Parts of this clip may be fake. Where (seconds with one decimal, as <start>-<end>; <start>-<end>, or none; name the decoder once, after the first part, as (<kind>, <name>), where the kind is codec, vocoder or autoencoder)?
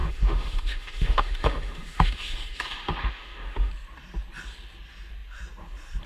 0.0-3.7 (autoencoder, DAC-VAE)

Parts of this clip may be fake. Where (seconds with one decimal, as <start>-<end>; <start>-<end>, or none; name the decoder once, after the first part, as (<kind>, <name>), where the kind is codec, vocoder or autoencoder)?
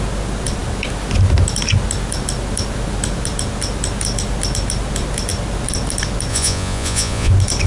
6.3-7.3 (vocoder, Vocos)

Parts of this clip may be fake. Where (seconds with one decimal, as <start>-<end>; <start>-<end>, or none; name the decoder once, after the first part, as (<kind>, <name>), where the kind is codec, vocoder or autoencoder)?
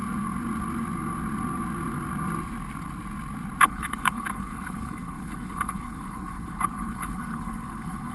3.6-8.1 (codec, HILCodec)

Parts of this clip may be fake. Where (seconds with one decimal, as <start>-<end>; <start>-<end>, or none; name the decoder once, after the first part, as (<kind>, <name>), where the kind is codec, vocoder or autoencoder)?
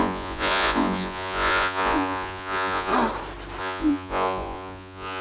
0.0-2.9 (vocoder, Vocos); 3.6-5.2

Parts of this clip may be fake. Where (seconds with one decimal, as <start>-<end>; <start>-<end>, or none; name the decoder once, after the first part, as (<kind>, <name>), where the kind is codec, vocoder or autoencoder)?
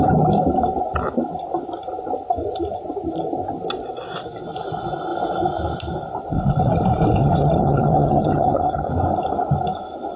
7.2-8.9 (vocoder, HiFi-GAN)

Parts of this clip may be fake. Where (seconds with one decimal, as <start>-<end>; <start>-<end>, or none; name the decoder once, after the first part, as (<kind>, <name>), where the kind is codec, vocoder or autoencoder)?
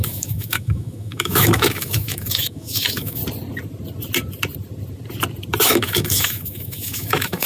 0.0-3.2 (autoencoder, DAC-VAE); 5.6-7.5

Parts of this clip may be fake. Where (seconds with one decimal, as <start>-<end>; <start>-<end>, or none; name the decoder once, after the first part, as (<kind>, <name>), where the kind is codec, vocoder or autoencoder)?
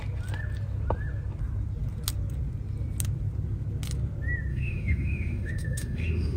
4.5-6.4 (autoencoder, DAC-VAE)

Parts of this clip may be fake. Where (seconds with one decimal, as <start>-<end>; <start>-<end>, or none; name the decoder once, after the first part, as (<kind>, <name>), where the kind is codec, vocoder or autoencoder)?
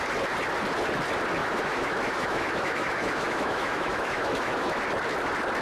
1.4-4.8 (autoencoder, DAC-VAE)